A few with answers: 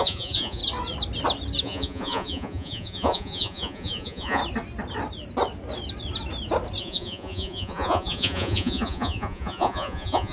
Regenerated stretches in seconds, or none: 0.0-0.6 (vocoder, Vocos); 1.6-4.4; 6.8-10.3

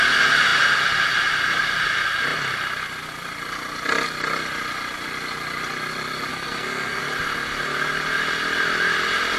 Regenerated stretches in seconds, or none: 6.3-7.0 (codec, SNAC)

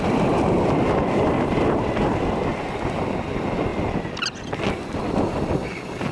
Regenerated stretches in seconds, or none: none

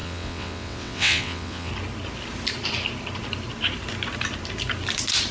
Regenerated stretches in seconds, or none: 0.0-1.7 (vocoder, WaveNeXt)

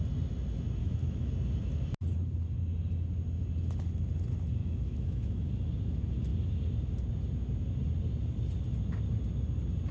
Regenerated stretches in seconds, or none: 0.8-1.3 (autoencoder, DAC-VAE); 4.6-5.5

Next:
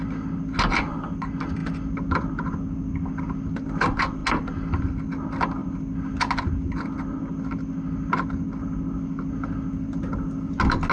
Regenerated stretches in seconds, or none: none